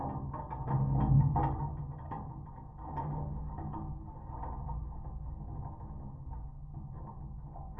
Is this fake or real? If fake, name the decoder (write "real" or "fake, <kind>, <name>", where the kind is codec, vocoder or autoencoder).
real